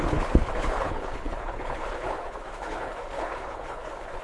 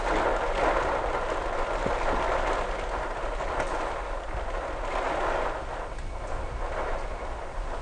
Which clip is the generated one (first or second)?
first